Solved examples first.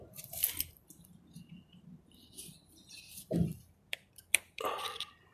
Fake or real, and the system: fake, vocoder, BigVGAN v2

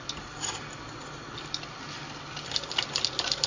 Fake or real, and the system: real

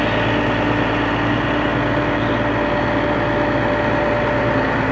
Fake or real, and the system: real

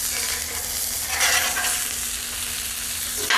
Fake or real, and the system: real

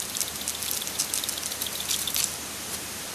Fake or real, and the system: fake, vocoder, BigVGAN v2